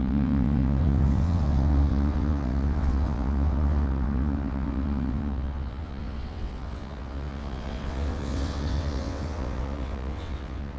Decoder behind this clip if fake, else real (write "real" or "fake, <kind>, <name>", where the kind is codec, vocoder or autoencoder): fake, vocoder, WaveNeXt